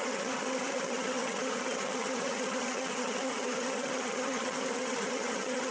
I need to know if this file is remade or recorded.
remade